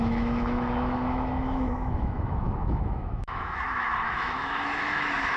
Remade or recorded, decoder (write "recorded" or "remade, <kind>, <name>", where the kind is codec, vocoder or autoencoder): remade, autoencoder, DAC-VAE